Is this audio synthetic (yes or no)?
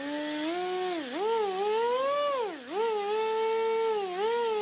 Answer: no